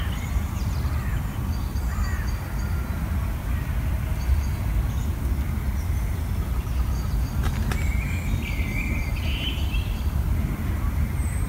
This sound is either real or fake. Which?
real